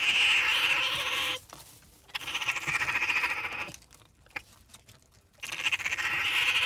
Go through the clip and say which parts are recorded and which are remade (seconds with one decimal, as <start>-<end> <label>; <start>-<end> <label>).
0.0-0.5 recorded; 0.5-3.0 remade; 3.0-6.7 recorded